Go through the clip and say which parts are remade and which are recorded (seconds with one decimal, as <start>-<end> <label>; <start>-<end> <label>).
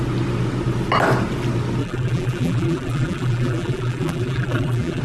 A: 0.0-1.8 recorded; 1.8-5.0 remade